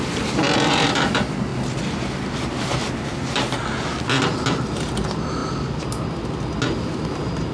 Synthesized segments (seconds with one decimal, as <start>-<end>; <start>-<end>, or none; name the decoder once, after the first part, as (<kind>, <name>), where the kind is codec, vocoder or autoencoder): none